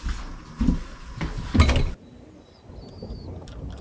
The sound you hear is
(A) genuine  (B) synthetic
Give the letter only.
A